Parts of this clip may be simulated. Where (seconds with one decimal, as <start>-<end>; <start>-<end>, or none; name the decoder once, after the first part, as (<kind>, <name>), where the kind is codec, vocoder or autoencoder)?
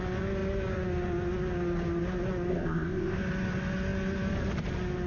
2.5-3.2 (codec, ZipCodec)